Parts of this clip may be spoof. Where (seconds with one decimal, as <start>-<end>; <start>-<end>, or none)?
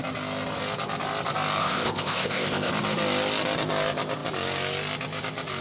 1.6-2.7